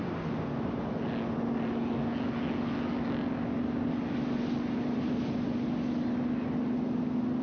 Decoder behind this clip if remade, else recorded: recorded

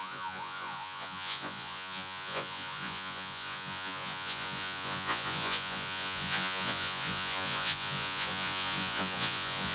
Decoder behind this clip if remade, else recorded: remade, vocoder, Vocos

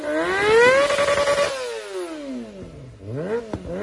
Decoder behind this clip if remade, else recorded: recorded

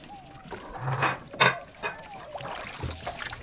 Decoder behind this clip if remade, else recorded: recorded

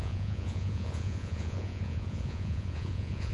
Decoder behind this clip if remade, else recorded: remade, vocoder, Vocos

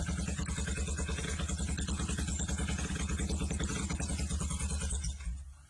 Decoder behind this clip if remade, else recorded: recorded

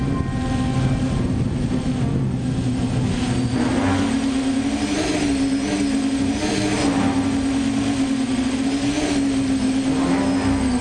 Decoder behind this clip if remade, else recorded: recorded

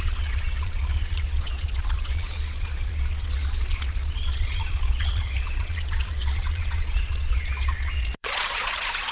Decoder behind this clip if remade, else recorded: remade, vocoder, Vocos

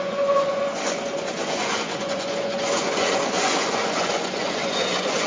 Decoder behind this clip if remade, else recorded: remade, vocoder, Vocos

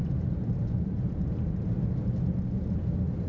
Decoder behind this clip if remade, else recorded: recorded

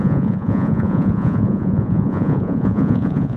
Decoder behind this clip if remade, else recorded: remade, vocoder, Vocos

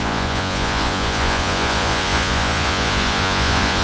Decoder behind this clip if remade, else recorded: remade, vocoder, Vocos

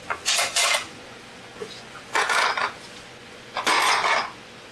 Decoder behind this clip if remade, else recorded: remade, vocoder, Vocos